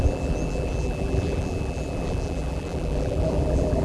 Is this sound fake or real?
fake